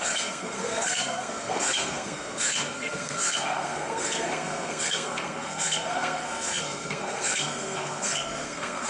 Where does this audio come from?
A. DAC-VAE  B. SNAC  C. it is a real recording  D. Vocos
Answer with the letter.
B